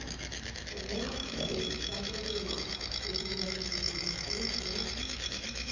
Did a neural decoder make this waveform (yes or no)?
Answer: yes